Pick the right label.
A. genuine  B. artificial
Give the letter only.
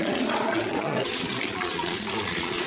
B